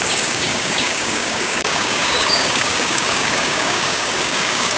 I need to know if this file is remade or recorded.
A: remade